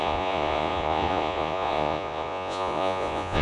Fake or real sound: fake